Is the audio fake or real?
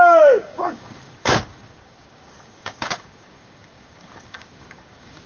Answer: fake